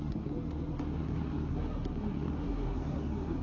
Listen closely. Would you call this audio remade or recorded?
remade